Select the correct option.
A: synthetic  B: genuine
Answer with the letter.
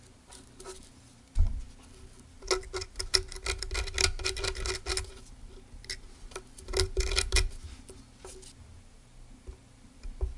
B